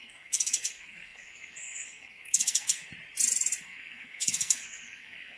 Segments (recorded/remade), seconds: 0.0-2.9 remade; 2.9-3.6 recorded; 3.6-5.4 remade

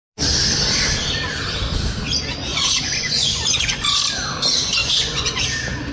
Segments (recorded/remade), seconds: 0.0-2.5 recorded; 2.5-4.0 remade; 4.0-4.8 recorded; 4.8-5.4 remade; 5.4-5.9 recorded